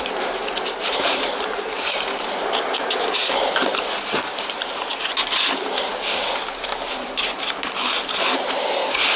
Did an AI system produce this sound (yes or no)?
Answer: yes